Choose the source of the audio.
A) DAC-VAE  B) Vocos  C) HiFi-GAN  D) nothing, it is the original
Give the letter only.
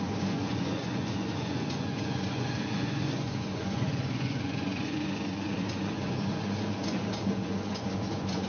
B